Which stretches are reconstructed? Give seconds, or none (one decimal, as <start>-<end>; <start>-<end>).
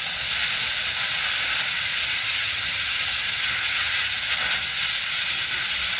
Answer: 2.0-4.3